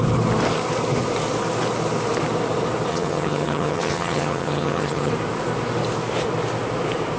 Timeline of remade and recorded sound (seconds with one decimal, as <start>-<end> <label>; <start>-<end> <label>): 0.0-2.9 recorded; 2.9-5.1 remade; 5.1-7.2 recorded